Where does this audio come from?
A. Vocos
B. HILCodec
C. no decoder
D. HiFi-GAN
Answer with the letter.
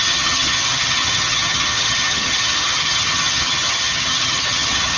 D